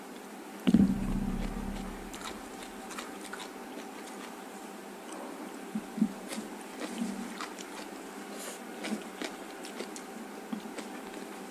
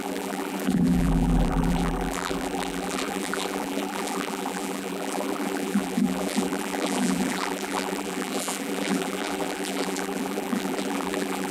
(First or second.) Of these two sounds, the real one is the first